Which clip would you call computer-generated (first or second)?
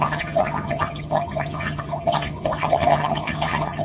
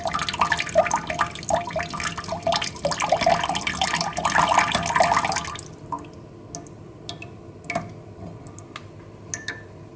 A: first